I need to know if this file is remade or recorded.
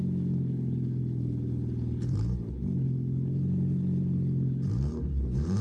remade